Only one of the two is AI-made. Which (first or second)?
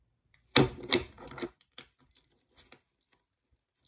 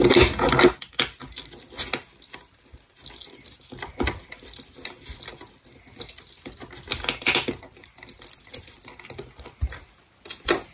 first